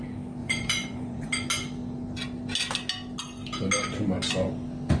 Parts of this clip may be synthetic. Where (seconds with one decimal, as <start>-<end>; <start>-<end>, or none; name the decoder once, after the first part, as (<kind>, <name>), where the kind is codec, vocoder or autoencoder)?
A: 0.4-1.3 (vocoder, Vocos)